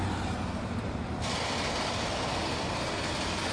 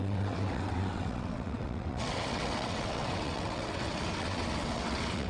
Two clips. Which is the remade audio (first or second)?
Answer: second